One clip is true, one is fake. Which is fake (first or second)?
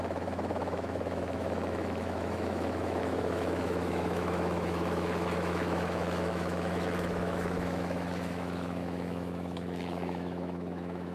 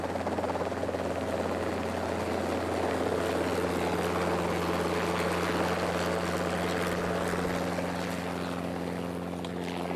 first